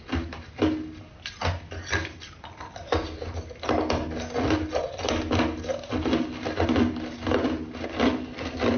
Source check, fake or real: real